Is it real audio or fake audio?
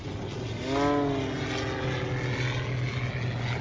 real